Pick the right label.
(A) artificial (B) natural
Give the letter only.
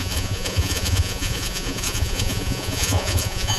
A